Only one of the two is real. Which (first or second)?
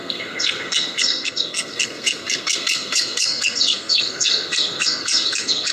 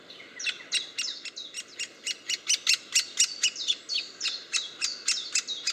second